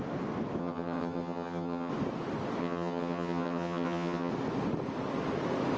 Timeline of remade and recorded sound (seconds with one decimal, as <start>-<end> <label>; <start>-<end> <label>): 0.0-0.6 recorded; 0.6-1.9 remade; 1.9-2.6 recorded; 2.6-4.3 remade; 4.3-5.8 recorded